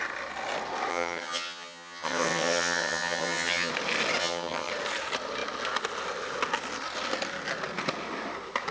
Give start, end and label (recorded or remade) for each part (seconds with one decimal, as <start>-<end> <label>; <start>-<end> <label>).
0.0-0.9 recorded; 0.9-3.7 remade; 3.7-4.2 recorded; 4.2-4.7 remade; 4.7-8.7 recorded